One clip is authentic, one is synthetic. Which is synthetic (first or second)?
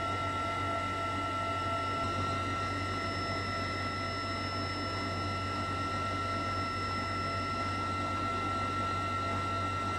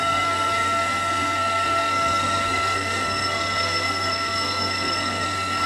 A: second